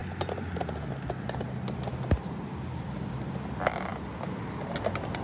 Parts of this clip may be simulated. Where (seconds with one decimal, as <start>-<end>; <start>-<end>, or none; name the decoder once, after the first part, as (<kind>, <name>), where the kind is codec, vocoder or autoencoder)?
none